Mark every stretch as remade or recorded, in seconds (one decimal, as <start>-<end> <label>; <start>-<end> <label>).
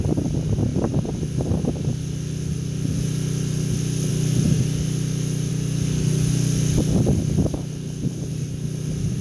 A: 0.0-9.2 recorded